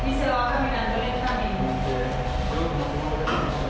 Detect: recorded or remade recorded